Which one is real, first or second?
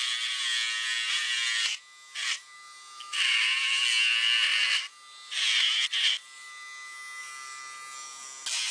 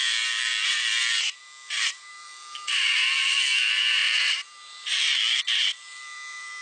first